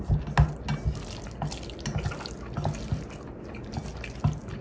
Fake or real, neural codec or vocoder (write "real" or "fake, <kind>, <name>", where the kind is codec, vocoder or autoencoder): real